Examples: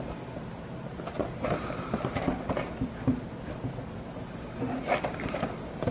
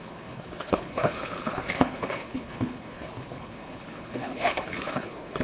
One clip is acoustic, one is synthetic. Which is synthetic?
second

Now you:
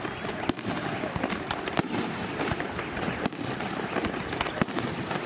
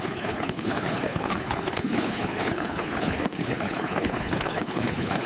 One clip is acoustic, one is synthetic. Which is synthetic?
second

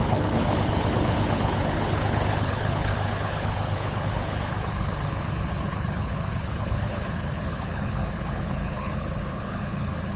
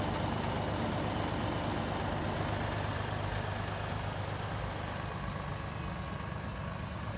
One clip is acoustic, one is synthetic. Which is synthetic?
first